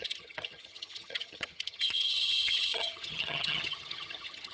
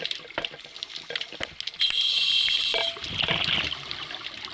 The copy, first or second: first